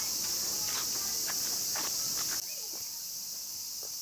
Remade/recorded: recorded